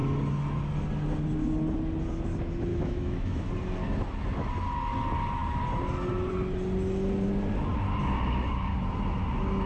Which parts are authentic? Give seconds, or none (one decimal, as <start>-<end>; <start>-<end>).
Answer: 0.0-2.7; 3.5-9.7